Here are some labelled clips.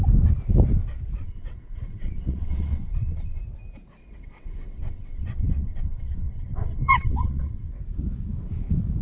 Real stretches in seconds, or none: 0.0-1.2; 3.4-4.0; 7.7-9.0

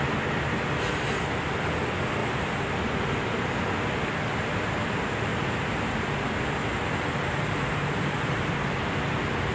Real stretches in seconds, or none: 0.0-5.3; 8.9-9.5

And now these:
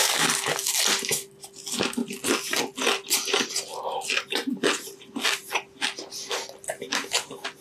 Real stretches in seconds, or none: 0.7-7.6